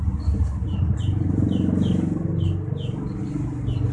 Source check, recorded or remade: recorded